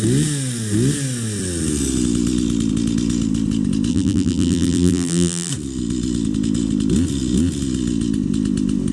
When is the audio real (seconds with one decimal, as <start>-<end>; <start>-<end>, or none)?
0.0-3.9; 5.5-8.9